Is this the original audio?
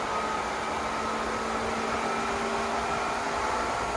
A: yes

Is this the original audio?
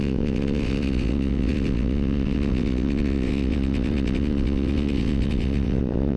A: no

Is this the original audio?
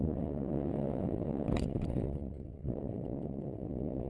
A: no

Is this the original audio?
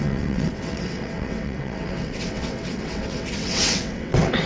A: no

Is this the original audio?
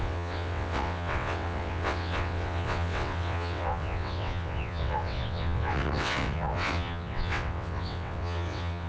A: no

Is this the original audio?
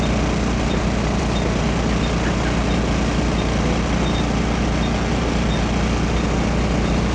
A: yes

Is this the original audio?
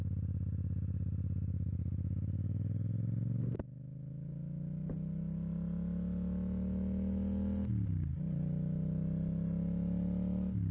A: yes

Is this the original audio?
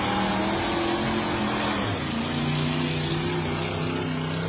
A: yes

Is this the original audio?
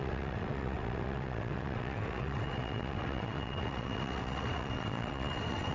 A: no